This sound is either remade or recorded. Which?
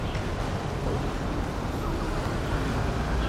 recorded